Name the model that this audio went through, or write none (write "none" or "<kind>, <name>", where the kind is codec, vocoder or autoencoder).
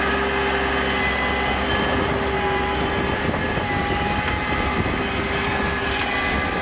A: none